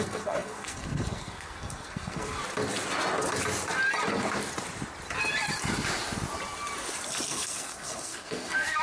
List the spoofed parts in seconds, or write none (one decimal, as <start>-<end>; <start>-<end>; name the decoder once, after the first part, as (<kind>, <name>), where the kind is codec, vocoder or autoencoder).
0.0-2.4 (codec, SNAC); 7.3-8.8